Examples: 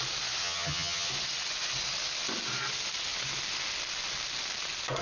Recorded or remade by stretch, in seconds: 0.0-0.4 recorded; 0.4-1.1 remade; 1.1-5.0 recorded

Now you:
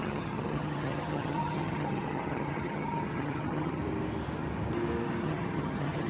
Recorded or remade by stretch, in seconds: 0.0-3.8 remade; 3.8-5.2 recorded; 5.2-6.1 remade

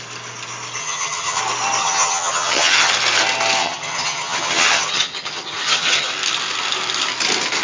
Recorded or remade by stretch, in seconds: 0.0-0.8 recorded; 0.8-1.4 remade; 1.4-1.8 recorded; 1.8-2.9 remade; 2.9-3.6 recorded; 3.6-6.1 remade; 6.1-7.6 recorded

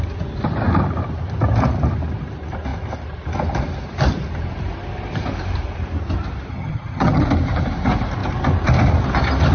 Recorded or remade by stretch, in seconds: 0.0-6.5 recorded; 6.5-7.2 remade; 7.2-9.5 recorded

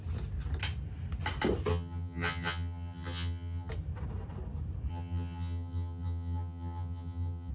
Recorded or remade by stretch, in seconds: 0.0-1.7 recorded; 1.7-3.7 remade; 3.7-4.9 recorded; 4.9-7.5 remade

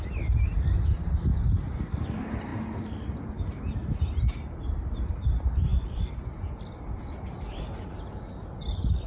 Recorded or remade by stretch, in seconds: 0.0-9.1 recorded